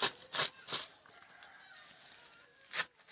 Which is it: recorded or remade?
recorded